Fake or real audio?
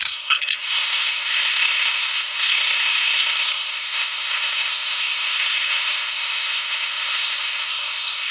fake